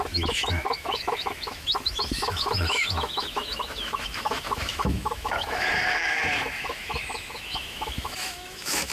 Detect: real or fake fake